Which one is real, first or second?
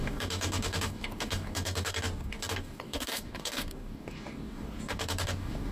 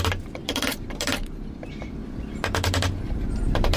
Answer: second